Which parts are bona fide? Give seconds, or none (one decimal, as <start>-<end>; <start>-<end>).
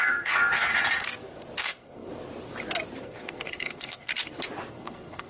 0.7-1.6; 2.1-3.0; 4.1-4.7